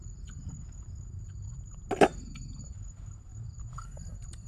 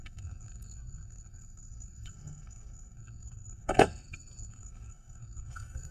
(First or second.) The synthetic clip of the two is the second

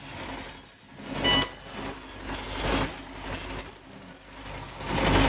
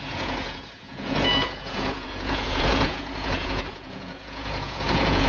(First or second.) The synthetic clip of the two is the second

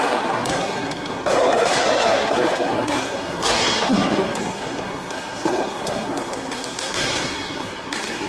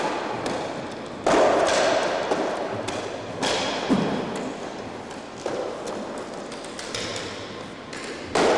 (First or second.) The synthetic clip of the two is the first